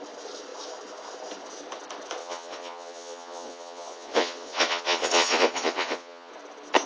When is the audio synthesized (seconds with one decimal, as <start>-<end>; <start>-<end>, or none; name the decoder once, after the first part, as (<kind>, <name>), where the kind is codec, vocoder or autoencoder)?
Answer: 2.2-6.3 (vocoder, Vocos)